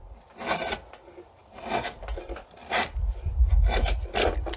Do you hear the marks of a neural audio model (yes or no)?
no